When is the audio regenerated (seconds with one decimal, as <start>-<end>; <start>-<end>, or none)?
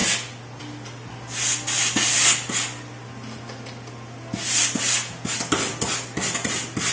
none